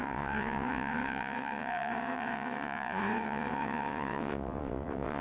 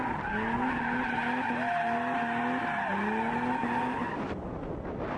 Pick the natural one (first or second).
second